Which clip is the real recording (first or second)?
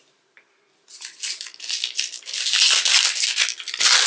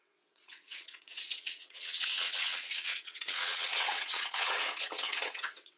first